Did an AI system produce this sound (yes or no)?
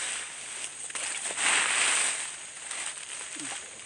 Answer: no